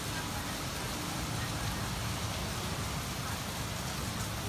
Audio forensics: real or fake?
real